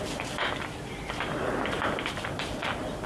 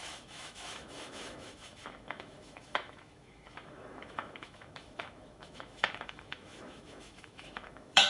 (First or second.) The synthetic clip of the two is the second